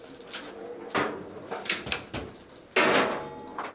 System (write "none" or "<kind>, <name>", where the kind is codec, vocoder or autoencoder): none